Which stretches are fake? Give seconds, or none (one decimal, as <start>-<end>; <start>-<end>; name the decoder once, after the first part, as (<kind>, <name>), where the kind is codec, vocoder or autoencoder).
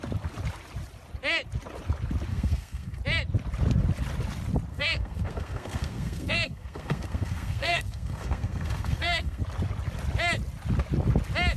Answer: 2.3-3.0 (codec, SNAC); 4.7-9.4